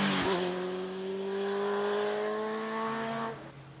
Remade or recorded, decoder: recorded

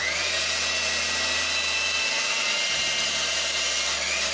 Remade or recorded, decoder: recorded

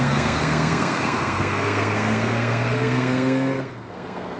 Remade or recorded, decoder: remade, codec, SNAC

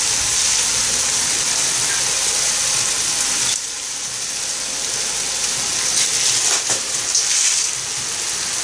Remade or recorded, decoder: recorded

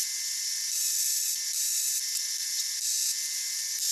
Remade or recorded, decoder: recorded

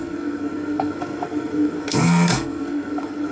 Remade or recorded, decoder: remade, codec, SNAC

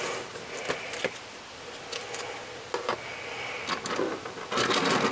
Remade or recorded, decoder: recorded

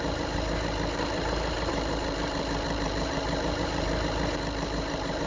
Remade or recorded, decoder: remade, vocoder, BigVGAN v2